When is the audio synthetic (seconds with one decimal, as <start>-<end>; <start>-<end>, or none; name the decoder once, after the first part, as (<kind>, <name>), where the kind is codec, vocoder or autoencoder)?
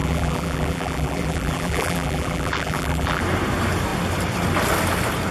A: 0.0-3.2 (vocoder, BigVGAN v2)